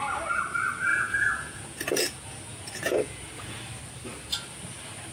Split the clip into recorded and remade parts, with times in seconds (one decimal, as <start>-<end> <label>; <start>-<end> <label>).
0.0-0.9 recorded; 0.9-3.6 remade; 3.6-5.1 recorded